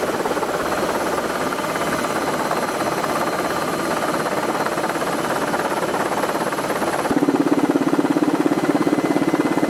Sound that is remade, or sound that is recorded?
recorded